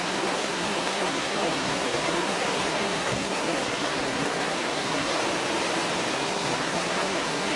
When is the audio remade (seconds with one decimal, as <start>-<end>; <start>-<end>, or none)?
0.0-5.2; 6.1-7.6

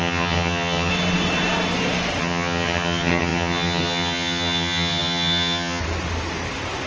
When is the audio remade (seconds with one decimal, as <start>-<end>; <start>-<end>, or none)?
0.0-0.9; 2.2-5.8